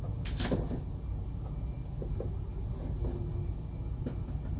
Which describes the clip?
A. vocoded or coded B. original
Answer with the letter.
B